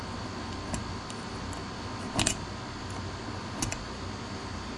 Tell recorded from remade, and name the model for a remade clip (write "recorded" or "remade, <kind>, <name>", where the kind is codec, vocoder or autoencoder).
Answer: recorded